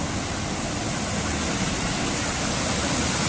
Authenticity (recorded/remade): recorded